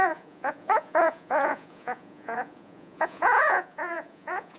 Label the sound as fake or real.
fake